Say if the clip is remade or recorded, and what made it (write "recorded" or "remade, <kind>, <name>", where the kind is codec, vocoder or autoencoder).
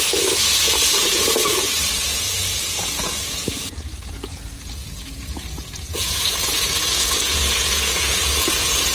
remade, vocoder, Vocos